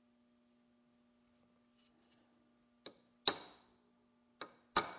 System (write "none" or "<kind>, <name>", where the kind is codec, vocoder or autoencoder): none